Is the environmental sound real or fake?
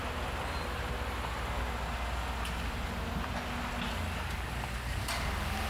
real